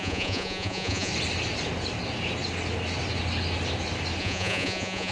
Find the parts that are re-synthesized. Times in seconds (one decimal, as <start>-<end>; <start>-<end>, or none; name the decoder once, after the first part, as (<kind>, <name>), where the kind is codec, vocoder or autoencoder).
0.0-1.1 (vocoder, Vocos); 4.2-5.1